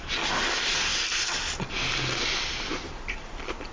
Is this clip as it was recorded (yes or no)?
yes